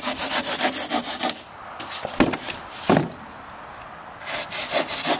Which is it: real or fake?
real